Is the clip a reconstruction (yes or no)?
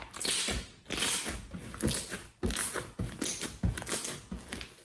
no